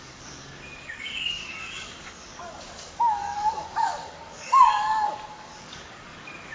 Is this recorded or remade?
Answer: remade